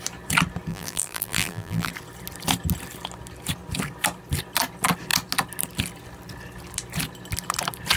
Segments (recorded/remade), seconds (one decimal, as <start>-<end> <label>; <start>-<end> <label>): 0.0-0.7 recorded; 0.7-1.9 remade; 1.9-8.0 recorded